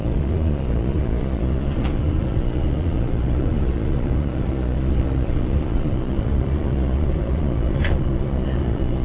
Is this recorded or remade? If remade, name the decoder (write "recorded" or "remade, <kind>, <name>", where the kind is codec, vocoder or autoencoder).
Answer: remade, vocoder, Vocos